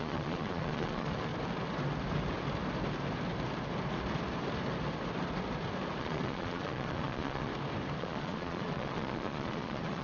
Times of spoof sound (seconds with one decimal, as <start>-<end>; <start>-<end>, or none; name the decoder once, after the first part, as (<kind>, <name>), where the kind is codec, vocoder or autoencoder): 0.0-1.3 (vocoder, Vocos); 6.0-7.5; 8.0-10.0